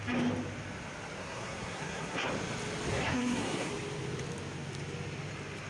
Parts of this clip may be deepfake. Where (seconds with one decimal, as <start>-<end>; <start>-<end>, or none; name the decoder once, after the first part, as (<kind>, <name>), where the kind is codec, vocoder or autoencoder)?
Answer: 1.2-2.3 (codec, SNAC); 2.9-3.7